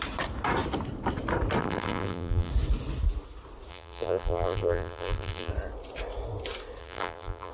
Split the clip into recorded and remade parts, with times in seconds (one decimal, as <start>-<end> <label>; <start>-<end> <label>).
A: 0.0-1.6 recorded; 1.6-2.5 remade; 2.5-3.7 recorded; 3.7-5.5 remade; 5.5-6.8 recorded; 6.8-7.5 remade